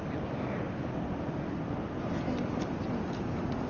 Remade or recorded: recorded